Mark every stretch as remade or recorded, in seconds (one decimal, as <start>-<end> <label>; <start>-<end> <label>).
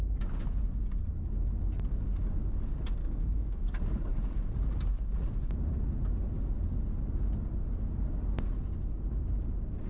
0.0-3.0 recorded; 3.0-3.6 remade; 3.6-9.9 recorded